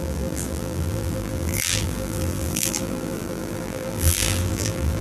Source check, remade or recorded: remade